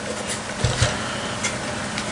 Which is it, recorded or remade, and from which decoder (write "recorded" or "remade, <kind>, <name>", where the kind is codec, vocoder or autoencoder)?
recorded